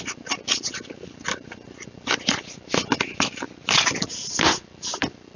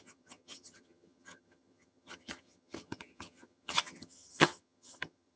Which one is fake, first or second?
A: second